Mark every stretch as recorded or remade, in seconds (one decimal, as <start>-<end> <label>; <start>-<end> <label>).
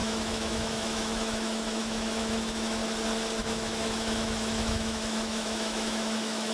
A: 0.0-2.8 remade; 2.8-3.4 recorded; 3.4-6.5 remade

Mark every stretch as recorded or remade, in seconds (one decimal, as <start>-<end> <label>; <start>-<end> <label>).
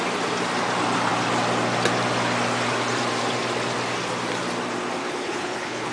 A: 0.0-5.0 recorded; 5.0-5.9 remade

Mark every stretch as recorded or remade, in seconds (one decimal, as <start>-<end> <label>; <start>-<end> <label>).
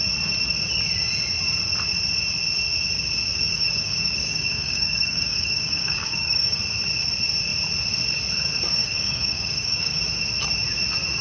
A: 0.0-3.5 recorded; 3.5-6.6 remade; 6.6-8.8 recorded; 8.8-10.0 remade; 10.0-11.2 recorded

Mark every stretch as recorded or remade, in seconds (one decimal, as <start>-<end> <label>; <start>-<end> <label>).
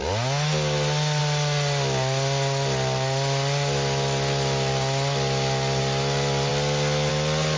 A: 0.0-7.6 recorded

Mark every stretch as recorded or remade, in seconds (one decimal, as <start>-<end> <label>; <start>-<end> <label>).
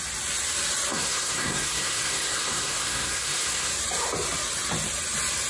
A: 0.0-0.9 recorded; 0.9-3.7 remade; 3.7-5.5 recorded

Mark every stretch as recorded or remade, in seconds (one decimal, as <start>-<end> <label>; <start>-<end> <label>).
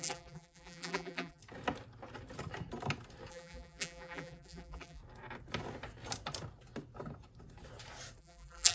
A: 0.0-1.4 remade; 1.4-3.3 recorded; 3.3-5.0 remade; 5.0-8.2 recorded; 8.2-8.7 remade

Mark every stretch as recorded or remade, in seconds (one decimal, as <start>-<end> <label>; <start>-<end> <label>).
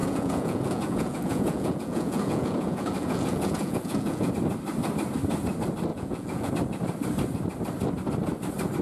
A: 0.0-4.3 remade; 4.3-5.9 recorded; 5.9-6.5 remade; 6.5-8.8 recorded